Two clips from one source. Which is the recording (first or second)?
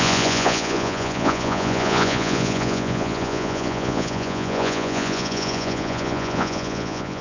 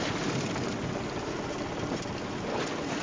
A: second